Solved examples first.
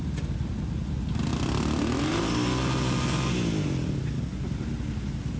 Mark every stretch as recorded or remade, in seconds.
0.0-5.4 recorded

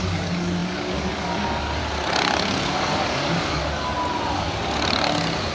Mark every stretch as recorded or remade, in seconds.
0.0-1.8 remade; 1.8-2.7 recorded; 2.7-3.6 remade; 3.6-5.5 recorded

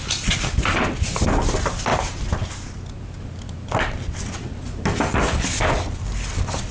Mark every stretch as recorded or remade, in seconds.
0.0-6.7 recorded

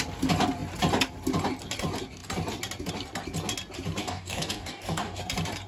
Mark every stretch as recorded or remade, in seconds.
0.0-4.0 recorded; 4.0-5.2 remade; 5.2-5.7 recorded

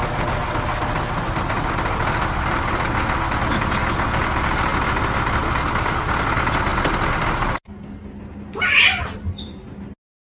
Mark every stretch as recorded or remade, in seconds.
0.0-10.3 recorded

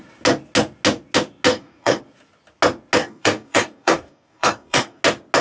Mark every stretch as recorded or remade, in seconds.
0.0-1.5 recorded; 1.5-2.0 remade; 2.0-3.0 recorded; 3.0-5.0 remade; 5.0-5.4 recorded